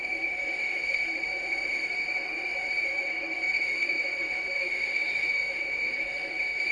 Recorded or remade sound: remade